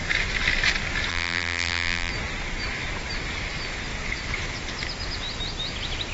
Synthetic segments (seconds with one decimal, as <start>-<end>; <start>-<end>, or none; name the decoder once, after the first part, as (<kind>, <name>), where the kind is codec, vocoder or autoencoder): 1.1-2.1 (vocoder, BigVGAN v2)